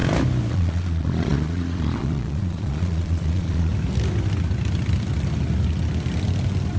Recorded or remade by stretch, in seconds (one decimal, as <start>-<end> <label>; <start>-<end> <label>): 0.0-0.5 recorded; 0.5-3.7 remade; 3.7-6.8 recorded